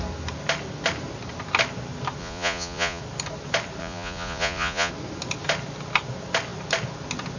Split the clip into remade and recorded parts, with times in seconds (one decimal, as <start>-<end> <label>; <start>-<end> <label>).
0.0-2.2 recorded; 2.2-3.0 remade; 3.0-3.8 recorded; 3.8-4.9 remade; 4.9-7.4 recorded